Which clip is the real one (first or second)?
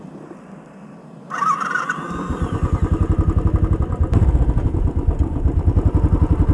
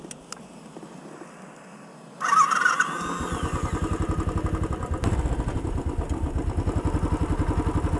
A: second